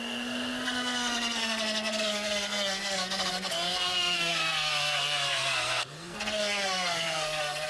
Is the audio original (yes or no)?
no